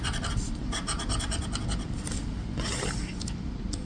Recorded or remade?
recorded